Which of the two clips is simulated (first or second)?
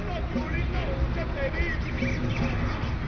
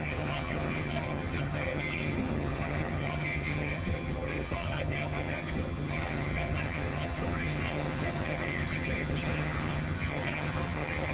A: second